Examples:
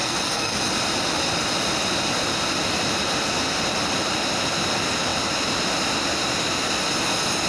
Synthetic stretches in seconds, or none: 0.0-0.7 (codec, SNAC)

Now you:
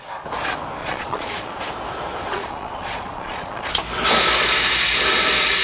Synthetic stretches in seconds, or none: 0.8-1.6 (vocoder, Vocos); 2.3-3.8